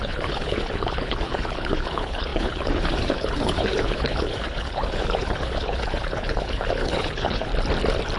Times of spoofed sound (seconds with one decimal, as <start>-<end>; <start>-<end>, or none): 0.0-7.5